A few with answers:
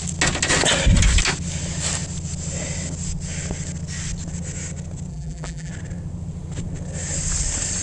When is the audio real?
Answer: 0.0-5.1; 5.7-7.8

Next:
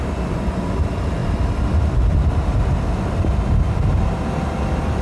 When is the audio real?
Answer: 0.0-1.2; 2.1-5.0

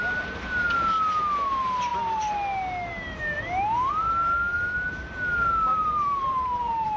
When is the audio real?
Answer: 0.0-5.7

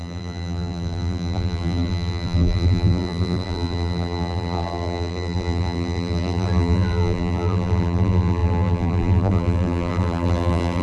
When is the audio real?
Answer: none

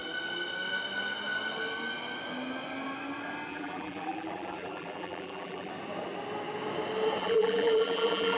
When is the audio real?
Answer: 0.0-3.5; 5.7-7.2

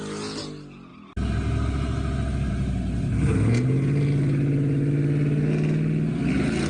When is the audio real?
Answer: 0.0-6.7

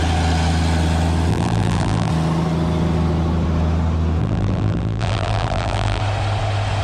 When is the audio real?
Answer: 0.0-1.3; 2.1-4.2; 6.0-6.8